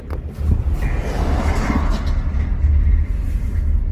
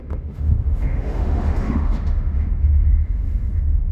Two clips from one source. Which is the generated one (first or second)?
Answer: second